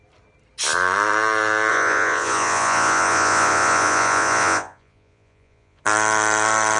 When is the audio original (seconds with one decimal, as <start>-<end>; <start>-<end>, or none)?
0.0-1.7; 5.8-6.8